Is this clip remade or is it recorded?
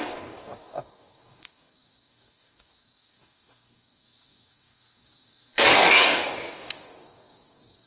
remade